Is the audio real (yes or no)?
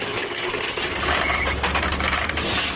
yes